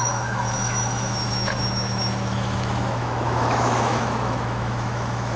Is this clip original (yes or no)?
no